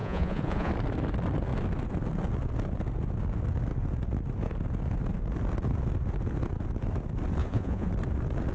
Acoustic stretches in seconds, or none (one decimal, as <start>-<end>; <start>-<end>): 0.7-7.4; 7.9-8.5